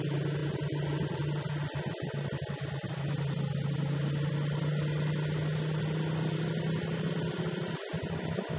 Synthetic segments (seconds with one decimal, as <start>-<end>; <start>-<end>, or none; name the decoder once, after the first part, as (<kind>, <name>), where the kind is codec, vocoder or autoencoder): none